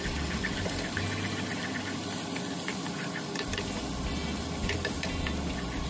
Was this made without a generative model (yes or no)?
yes